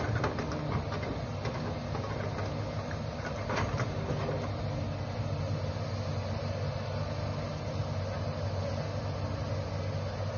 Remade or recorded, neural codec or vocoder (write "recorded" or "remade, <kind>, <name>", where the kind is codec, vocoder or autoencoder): recorded